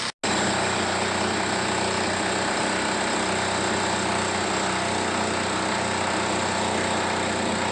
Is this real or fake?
real